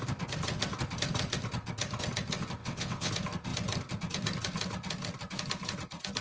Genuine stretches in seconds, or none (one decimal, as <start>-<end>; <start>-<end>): 0.0-2.6; 3.1-6.2